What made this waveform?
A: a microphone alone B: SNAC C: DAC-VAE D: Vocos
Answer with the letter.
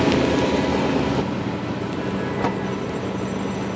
A